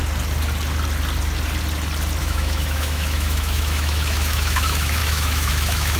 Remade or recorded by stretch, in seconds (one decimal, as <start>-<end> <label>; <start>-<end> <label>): 0.0-2.2 recorded; 2.2-6.0 remade